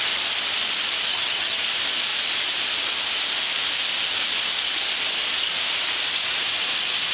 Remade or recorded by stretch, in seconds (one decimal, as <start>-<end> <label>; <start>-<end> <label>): 0.0-1.1 recorded; 1.1-1.6 remade; 1.6-7.1 recorded